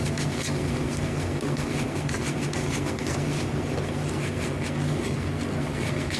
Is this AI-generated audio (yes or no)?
yes